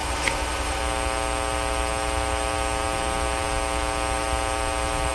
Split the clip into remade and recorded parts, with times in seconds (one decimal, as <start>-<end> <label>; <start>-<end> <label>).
0.0-0.8 remade; 0.8-5.1 recorded